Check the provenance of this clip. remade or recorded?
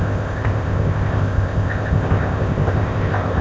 remade